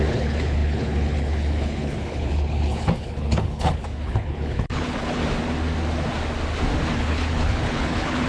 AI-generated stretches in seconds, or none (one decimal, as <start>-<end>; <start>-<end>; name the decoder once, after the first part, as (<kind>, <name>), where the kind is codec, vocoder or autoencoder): 0.0-5.2 (codec, HILCodec); 7.0-8.3